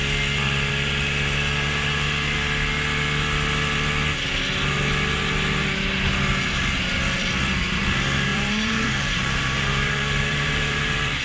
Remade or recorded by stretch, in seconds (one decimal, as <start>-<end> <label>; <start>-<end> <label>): 0.0-8.3 recorded; 8.3-11.2 remade